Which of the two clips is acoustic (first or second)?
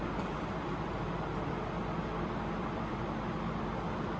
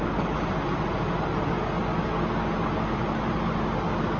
second